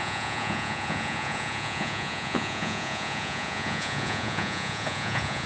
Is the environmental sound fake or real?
fake